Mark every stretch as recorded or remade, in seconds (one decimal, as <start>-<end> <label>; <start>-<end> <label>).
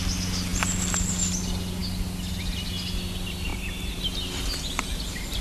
0.0-3.5 recorded; 3.5-4.0 remade; 4.0-5.4 recorded